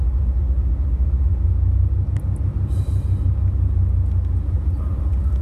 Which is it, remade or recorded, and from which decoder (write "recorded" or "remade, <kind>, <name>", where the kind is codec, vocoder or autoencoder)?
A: recorded